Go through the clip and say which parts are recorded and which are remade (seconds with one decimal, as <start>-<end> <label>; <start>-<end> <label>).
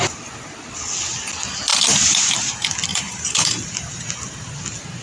0.0-1.7 recorded; 1.7-2.5 remade; 2.5-2.9 recorded; 2.9-4.0 remade; 4.0-5.0 recorded